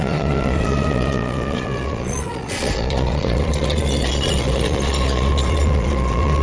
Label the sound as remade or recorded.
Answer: remade